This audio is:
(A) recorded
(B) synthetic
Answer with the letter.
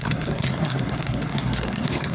B